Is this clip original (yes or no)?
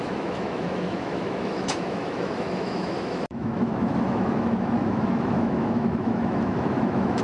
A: no